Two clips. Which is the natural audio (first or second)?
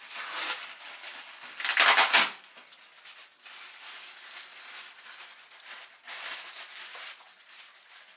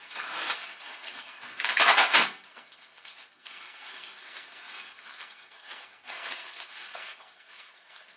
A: first